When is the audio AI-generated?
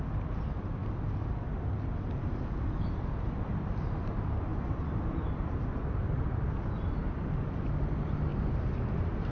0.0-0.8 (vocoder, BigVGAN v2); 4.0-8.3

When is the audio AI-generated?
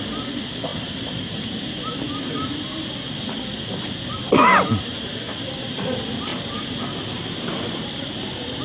0.7-2.9 (vocoder, BigVGAN v2); 4.7-5.5; 6.3-6.8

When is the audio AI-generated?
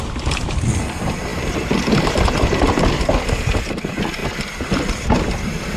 none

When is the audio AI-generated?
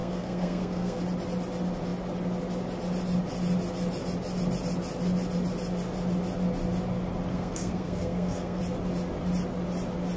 0.0-1.0 (codec, SNAC); 7.3-8.6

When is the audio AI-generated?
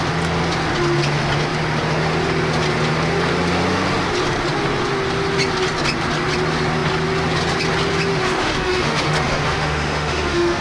8.1-10.6 (autoencoder, DAC-VAE)